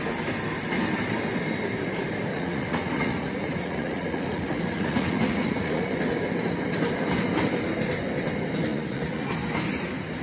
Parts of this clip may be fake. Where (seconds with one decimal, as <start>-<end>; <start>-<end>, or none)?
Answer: 2.3-5.9; 8.7-9.3